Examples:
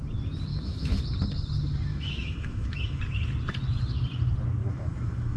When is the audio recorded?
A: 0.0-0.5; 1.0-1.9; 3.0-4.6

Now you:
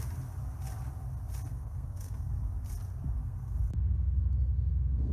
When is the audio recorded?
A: 0.0-1.5; 2.3-3.2

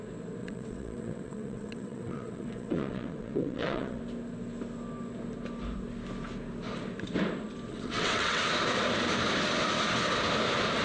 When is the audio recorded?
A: 0.0-0.4; 4.0-7.7; 8.4-10.8

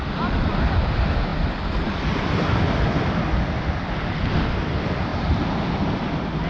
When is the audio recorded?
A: 0.0-6.5